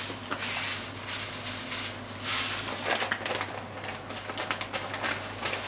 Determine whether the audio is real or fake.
real